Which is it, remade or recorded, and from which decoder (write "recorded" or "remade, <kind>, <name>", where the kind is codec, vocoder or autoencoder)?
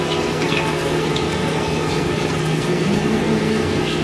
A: remade, codec, SNAC